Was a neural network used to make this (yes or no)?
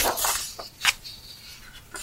no